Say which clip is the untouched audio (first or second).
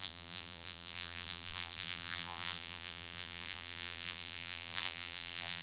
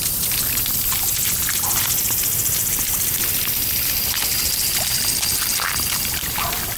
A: second